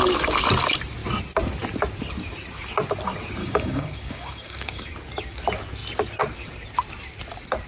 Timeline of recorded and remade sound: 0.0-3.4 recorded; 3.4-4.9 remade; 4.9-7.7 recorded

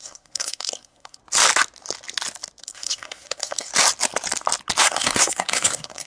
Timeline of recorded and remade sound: 0.0-1.2 remade; 1.2-2.6 recorded; 2.6-3.7 remade; 3.7-4.8 recorded; 4.8-6.1 remade

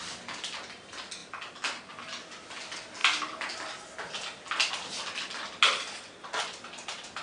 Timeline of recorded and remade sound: 0.0-7.2 recorded

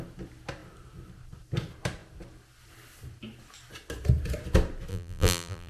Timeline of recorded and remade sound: 0.0-4.9 recorded; 4.9-5.7 remade